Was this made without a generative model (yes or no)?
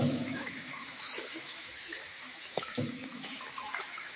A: no